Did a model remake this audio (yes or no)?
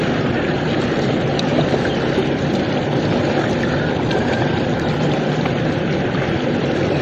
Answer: no